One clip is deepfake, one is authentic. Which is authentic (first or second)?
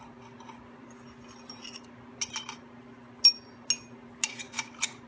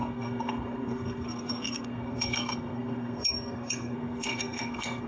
first